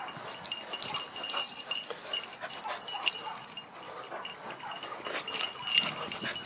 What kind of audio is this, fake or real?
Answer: real